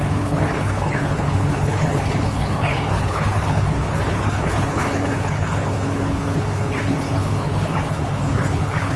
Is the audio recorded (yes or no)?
no